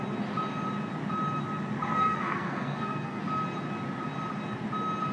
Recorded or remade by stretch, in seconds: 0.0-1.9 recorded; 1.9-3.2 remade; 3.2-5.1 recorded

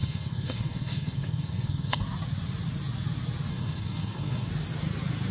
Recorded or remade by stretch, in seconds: 0.0-2.0 remade; 2.0-3.5 recorded; 3.5-4.5 remade; 4.5-5.3 recorded